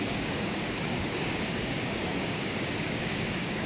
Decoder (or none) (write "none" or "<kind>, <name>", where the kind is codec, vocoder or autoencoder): codec, DAC